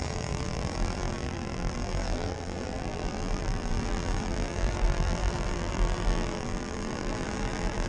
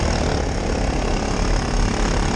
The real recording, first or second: second